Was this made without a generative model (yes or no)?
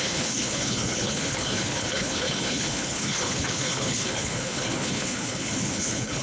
no